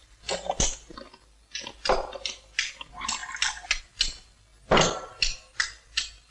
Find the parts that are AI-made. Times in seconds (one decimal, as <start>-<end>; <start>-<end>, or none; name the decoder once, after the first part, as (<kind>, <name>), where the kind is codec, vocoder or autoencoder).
none